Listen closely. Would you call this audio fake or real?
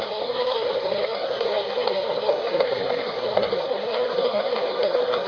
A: fake